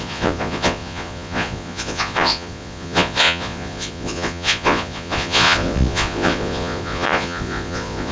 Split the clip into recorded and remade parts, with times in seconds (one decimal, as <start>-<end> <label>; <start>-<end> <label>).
0.0-8.1 remade